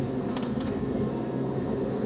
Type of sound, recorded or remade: remade